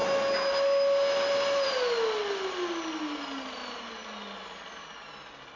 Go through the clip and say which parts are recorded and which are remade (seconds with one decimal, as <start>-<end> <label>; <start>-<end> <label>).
0.0-5.6 recorded